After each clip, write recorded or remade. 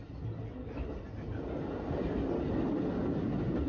recorded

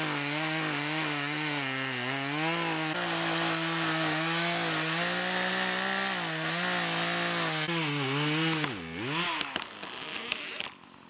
recorded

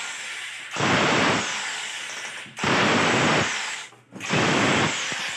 recorded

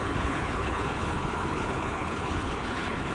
remade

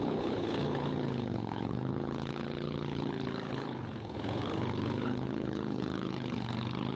remade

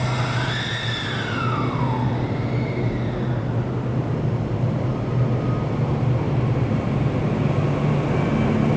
recorded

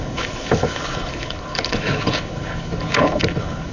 remade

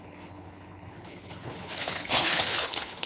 remade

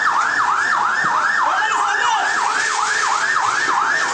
recorded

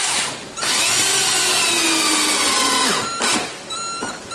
recorded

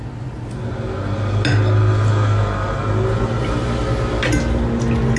recorded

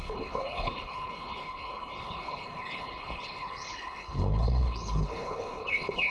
remade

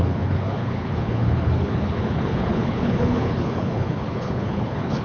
remade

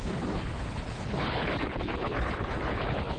remade